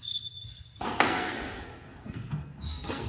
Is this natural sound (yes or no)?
no